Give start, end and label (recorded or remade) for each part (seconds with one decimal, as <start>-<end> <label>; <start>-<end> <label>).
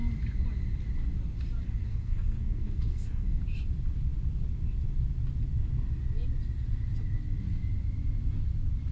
0.0-1.8 recorded; 1.8-3.4 remade; 3.4-8.9 recorded